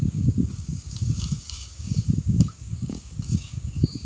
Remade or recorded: remade